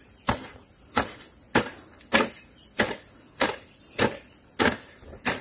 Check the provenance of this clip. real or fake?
real